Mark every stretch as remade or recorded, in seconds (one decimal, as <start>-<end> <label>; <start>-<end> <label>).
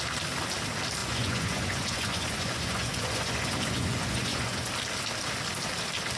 0.0-1.0 recorded; 1.0-4.7 remade; 4.7-6.2 recorded